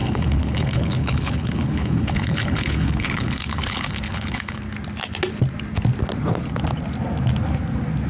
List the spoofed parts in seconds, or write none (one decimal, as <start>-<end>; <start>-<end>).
0.0-4.6